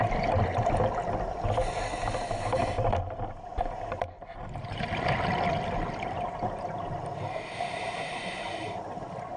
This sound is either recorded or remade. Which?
recorded